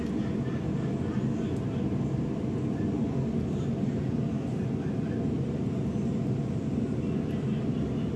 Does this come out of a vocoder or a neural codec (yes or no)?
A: no